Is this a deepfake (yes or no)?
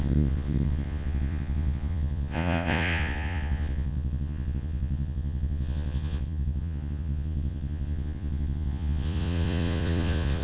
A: yes